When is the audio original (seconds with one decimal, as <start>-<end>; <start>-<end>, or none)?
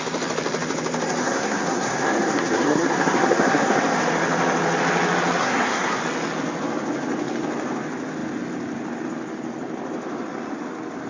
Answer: 0.0-1.2; 3.8-5.4; 6.0-11.1